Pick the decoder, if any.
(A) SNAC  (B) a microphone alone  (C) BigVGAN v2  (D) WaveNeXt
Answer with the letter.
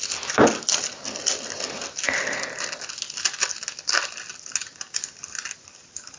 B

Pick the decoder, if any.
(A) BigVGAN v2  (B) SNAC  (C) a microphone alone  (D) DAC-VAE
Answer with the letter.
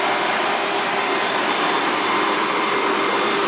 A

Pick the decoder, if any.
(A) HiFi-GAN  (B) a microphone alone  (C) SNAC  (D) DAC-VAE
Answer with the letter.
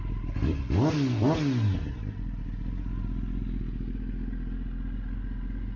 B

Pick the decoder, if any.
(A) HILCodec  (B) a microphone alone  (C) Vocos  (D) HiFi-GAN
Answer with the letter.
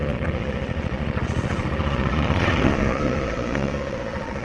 C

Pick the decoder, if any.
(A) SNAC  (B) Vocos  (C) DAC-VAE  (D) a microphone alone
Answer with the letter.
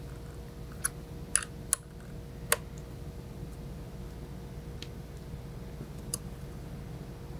D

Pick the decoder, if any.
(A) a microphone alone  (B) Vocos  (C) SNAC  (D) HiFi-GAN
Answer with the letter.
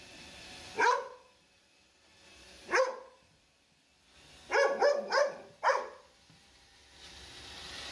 A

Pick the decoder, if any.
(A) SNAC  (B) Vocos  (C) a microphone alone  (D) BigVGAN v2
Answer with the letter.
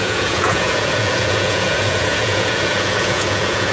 B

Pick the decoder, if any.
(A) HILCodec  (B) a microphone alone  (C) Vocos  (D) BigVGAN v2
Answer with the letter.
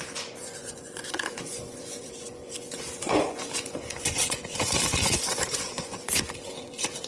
C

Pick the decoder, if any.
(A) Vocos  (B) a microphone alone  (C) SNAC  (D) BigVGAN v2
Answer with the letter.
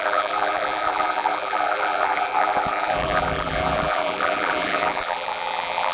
D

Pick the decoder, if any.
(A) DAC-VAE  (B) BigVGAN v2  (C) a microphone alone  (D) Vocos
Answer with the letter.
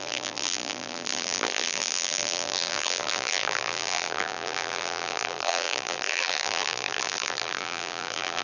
B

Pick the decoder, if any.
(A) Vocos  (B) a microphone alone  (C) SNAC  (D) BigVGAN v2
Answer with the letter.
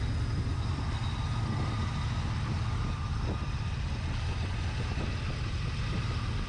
B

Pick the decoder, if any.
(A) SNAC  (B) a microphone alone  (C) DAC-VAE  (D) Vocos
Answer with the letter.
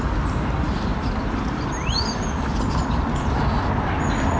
B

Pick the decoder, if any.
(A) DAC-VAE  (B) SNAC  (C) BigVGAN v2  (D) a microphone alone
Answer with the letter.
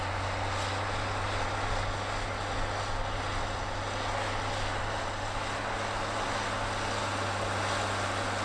D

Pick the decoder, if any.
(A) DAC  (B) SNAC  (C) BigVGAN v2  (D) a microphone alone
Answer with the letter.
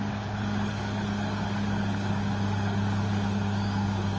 A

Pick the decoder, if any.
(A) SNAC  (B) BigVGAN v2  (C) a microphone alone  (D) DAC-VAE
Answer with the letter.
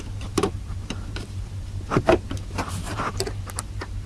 B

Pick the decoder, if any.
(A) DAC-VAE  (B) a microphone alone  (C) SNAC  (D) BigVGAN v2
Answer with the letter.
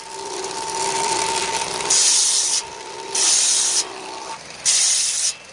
D